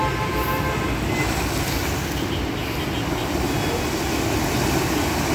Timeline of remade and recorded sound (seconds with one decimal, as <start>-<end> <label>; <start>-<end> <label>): 0.0-5.3 recorded